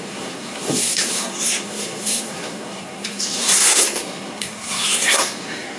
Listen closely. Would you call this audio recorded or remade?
remade